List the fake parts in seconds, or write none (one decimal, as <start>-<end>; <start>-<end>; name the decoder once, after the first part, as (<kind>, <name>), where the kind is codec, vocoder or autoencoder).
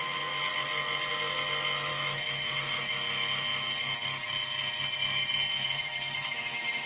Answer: 1.9-2.9 (autoencoder, DAC-VAE)